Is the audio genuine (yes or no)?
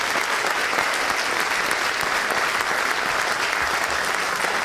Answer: yes